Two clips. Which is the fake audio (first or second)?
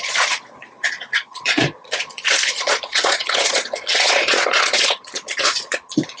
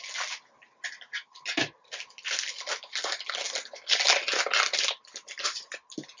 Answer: first